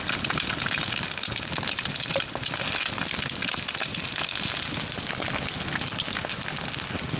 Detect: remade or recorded recorded